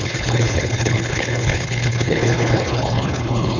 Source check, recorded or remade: remade